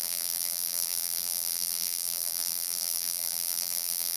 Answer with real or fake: fake